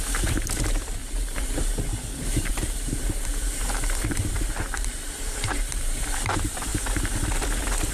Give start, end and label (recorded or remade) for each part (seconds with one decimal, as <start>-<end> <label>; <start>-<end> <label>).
0.0-1.0 remade; 1.0-2.5 recorded; 2.5-3.3 remade; 3.3-4.5 recorded; 4.5-6.7 remade; 6.7-7.9 recorded